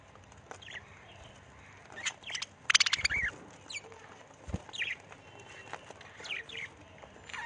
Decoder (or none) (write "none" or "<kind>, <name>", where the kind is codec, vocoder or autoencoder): none